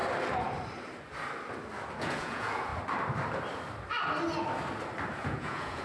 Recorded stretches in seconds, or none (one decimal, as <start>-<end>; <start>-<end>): 0.0-2.0; 2.7-5.2